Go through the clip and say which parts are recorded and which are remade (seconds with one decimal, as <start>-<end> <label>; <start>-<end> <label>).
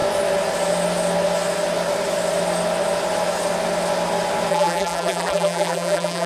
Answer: 0.0-4.5 recorded; 4.5-6.3 remade